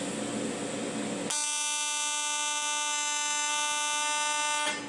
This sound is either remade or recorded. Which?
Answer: recorded